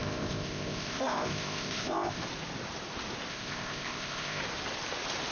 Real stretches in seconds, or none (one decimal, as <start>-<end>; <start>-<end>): 2.2-3.3; 4.4-5.3